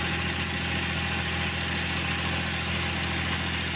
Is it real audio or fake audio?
real